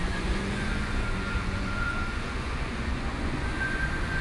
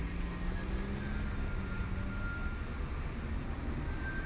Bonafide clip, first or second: second